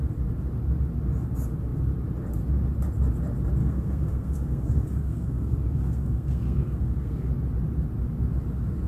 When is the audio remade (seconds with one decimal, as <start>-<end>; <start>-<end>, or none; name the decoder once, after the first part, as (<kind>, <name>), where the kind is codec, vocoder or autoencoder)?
3.6-7.3 (codec, SNAC)